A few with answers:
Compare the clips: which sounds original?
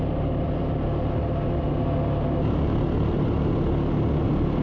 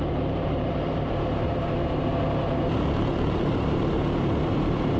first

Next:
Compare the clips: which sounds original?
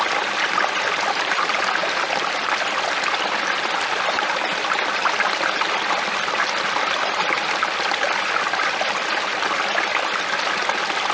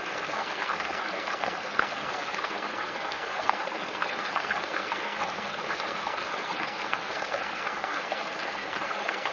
first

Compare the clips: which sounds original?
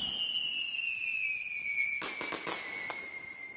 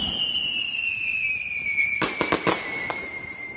first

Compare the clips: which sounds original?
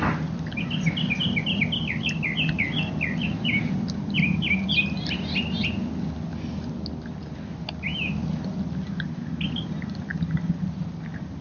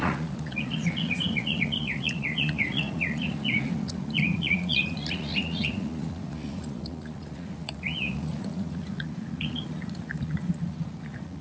first